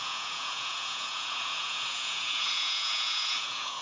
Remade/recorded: remade